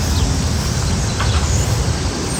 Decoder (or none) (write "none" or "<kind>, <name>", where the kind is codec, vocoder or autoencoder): none